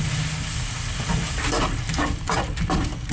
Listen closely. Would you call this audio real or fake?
real